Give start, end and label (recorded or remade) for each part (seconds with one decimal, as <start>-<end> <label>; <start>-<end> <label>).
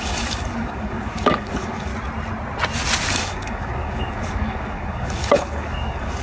0.0-1.9 remade; 1.9-3.1 recorded; 3.1-6.2 remade